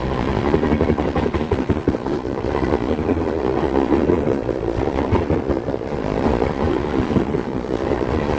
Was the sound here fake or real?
fake